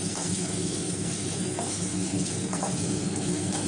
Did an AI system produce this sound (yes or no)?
yes